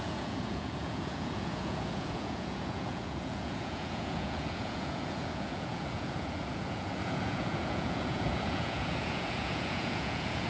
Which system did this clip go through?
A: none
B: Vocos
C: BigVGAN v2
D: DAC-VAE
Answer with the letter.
B